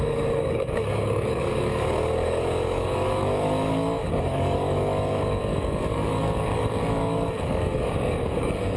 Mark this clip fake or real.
fake